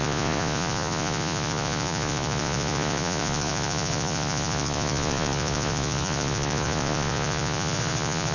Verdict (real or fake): fake